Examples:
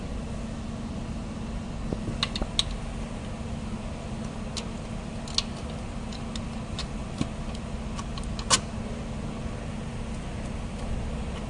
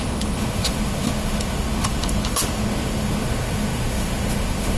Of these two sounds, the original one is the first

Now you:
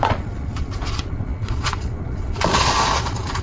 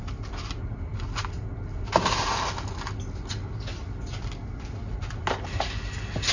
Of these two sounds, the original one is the second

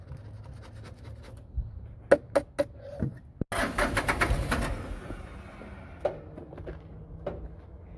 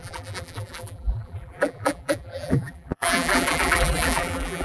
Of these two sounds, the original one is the first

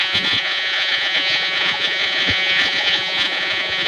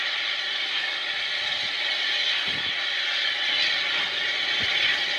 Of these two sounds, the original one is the second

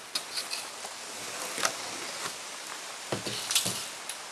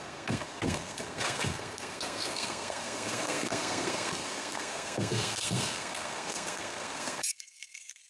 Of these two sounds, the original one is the first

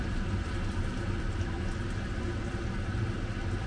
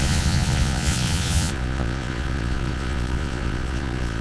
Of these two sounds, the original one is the first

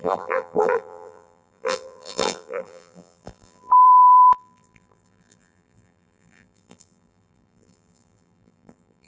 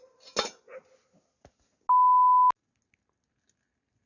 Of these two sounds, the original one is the second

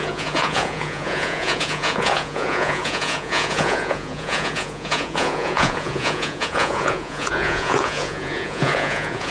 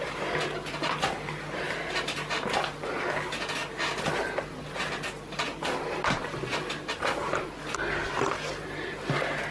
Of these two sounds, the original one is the second